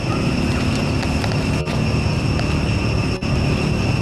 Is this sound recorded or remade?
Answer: recorded